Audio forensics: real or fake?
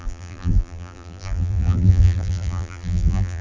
fake